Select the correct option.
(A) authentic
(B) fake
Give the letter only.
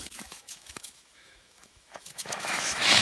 B